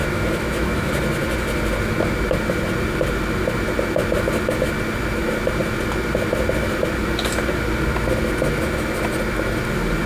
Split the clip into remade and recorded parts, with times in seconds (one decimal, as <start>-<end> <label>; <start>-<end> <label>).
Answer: 0.0-0.9 remade; 0.9-10.1 recorded